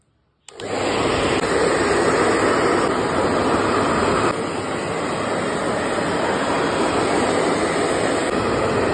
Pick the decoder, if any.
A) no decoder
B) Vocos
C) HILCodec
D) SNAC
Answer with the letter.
A